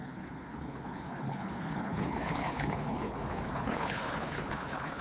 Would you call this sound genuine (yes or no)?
no